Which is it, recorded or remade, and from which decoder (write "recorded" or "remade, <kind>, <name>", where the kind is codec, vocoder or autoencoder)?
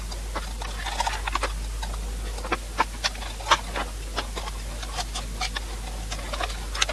recorded